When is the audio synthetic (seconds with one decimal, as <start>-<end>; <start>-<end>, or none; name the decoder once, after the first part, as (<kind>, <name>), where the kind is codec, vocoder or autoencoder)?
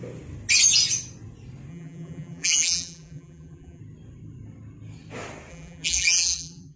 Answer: 1.7-3.8 (vocoder, BigVGAN v2); 5.5-6.8